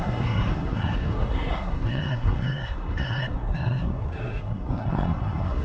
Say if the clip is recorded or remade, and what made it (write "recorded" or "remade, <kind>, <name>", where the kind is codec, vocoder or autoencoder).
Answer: remade, codec, SNAC